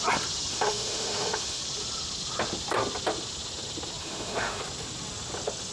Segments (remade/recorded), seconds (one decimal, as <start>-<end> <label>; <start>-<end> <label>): 0.0-0.5 recorded; 0.5-1.6 remade; 1.6-4.0 recorded; 4.0-4.6 remade; 4.6-5.7 recorded